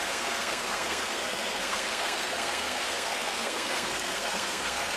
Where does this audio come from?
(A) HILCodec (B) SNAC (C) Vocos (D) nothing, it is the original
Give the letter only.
B